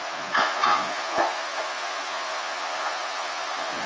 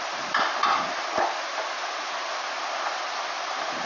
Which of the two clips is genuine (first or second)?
second